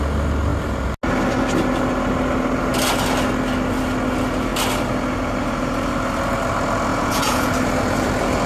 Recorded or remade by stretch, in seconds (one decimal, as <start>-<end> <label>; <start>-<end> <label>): 0.0-6.9 recorded; 6.9-7.5 remade; 7.5-8.5 recorded